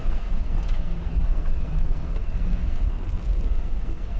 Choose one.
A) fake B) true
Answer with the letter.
A